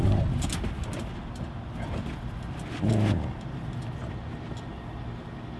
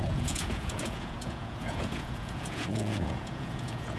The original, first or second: first